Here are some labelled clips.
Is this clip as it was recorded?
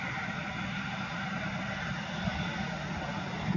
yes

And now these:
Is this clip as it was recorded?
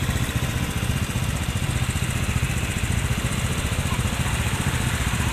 no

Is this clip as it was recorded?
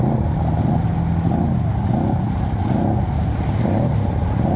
yes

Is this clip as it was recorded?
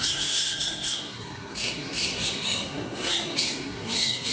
no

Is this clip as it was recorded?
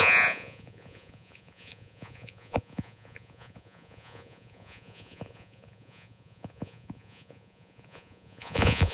no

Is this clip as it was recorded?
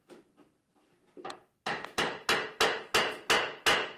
yes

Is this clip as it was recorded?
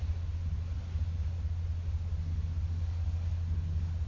yes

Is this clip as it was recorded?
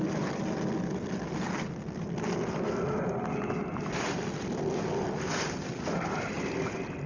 yes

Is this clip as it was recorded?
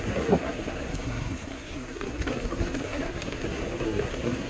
no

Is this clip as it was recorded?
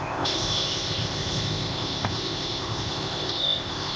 no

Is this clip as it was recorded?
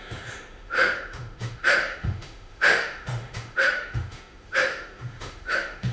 no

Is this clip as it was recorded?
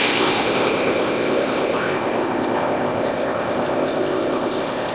no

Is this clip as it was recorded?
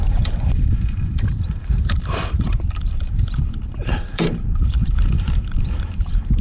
no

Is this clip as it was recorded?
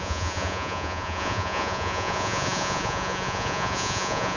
no